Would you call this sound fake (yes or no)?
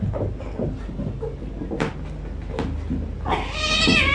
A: no